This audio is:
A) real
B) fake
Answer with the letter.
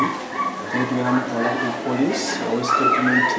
A